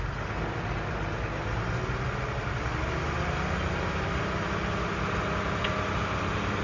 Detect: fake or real real